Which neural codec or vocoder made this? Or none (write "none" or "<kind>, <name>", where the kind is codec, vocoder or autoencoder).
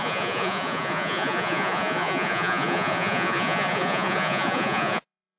vocoder, Vocos